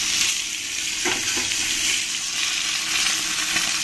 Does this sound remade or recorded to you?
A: recorded